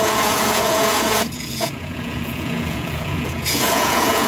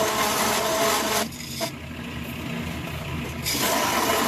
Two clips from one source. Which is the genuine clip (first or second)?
second